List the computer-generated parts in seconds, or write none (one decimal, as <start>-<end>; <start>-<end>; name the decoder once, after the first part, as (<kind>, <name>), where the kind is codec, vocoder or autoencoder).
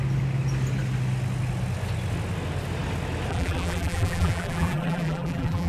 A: 3.3-5.7 (vocoder, BigVGAN v2)